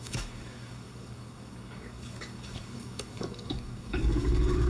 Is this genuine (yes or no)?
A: no